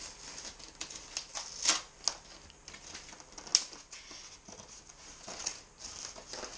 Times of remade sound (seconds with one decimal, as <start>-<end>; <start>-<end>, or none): none

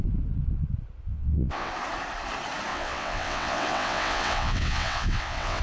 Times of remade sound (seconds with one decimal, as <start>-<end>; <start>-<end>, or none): 1.1-1.7; 2.7-5.6

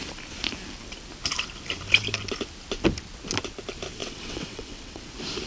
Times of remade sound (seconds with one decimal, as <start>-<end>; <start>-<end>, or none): 4.0-5.0

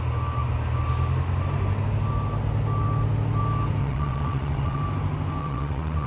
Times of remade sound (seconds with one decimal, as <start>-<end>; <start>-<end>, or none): 3.8-4.8; 5.4-6.1

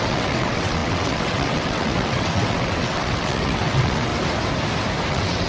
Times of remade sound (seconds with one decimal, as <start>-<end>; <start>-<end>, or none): 0.0-4.1; 5.1-5.5